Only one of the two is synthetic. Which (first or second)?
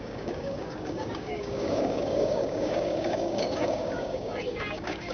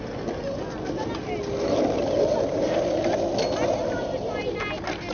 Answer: first